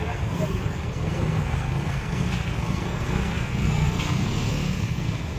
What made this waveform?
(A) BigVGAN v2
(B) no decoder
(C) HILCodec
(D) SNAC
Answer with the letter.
D